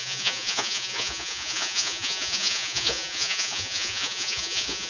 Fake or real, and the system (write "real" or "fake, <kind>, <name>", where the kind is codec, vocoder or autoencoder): fake, vocoder, Vocos